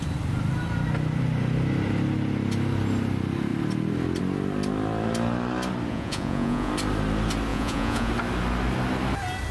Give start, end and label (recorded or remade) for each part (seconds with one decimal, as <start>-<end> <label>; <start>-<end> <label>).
0.0-5.9 recorded; 5.9-6.7 remade; 6.7-7.5 recorded; 7.5-8.1 remade; 8.1-9.5 recorded